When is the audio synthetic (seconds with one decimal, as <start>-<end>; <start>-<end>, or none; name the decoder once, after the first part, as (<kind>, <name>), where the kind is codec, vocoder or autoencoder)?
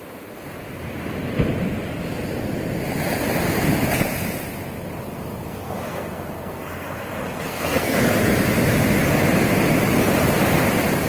5.1-8.0 (codec, SNAC)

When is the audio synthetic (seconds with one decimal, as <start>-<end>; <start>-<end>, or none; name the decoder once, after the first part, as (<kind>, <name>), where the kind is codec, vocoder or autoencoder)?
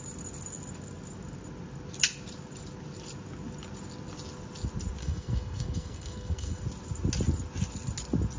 5.0-6.6 (codec, SNAC)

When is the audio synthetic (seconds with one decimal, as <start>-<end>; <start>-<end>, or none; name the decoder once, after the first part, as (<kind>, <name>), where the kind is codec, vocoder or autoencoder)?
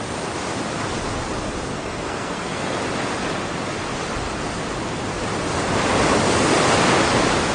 1.7-2.8 (codec, SNAC)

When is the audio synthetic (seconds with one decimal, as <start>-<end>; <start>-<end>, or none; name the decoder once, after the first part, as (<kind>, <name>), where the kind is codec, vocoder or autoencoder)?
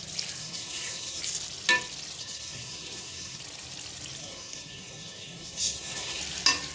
0.4-1.2 (codec, SNAC); 2.2-3.4; 4.2-6.2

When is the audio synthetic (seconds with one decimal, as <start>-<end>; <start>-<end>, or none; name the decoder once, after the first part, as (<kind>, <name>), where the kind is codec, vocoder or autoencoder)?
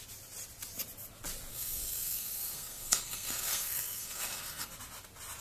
1.5-4.7 (codec, SNAC)